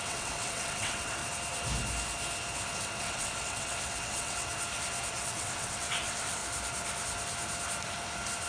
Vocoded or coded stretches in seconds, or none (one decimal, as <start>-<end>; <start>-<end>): 0.0-1.2; 2.8-4.5; 5.1-6.4